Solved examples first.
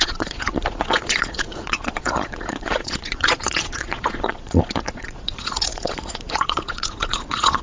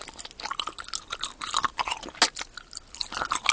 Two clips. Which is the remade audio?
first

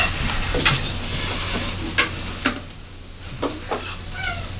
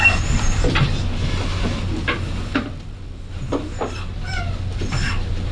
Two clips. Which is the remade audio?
second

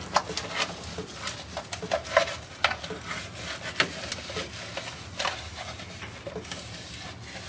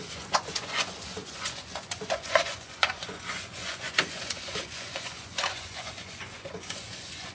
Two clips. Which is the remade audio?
second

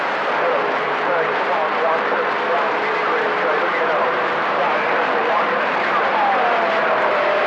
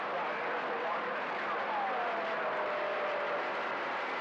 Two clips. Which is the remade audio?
first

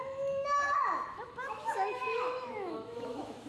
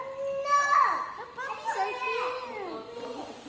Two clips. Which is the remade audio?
first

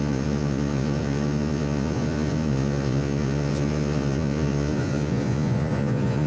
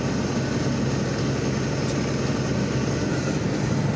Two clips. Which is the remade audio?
first